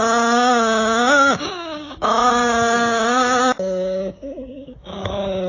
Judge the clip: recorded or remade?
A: remade